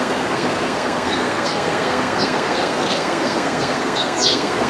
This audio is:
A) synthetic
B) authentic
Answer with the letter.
A